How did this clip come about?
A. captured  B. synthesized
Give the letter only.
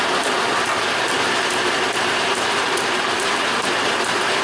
B